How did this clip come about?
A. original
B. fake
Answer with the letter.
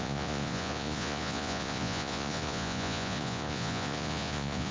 B